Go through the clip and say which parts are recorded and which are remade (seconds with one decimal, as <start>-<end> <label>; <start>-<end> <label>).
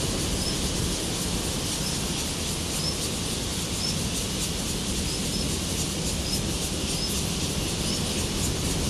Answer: 0.0-8.9 recorded